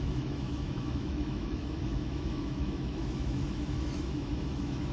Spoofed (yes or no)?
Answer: yes